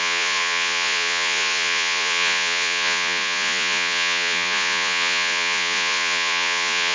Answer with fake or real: fake